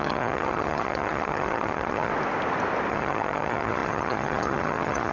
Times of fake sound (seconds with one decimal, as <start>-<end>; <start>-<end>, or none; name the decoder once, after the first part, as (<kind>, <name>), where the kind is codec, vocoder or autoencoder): 0.0-2.1 (vocoder, HiFi-GAN); 2.9-5.1